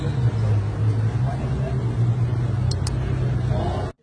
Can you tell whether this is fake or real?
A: real